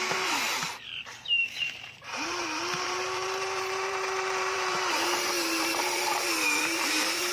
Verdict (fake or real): fake